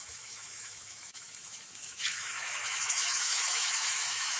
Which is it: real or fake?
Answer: fake